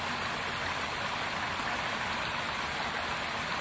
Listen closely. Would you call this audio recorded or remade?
recorded